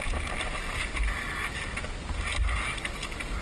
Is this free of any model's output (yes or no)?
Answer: yes